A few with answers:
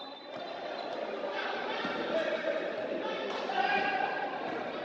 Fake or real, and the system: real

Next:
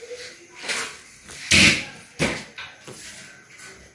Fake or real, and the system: real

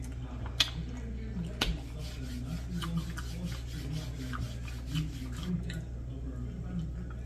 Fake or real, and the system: real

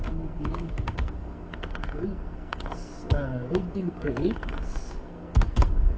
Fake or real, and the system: fake, codec, SNAC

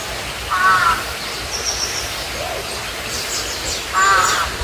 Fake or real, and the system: real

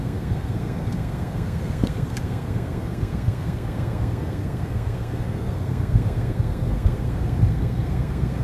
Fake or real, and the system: fake, codec, SNAC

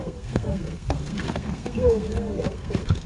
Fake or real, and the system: fake, codec, SNAC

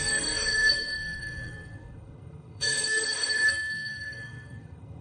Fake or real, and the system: fake, codec, SNAC